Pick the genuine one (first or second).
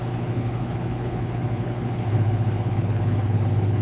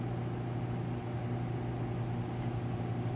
second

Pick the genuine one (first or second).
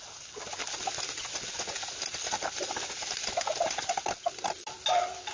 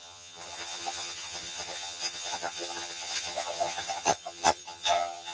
first